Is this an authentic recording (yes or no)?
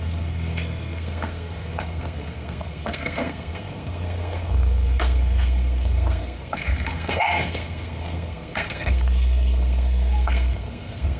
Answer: no